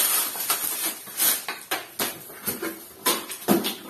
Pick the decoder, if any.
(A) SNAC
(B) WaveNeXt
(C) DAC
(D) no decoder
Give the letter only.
D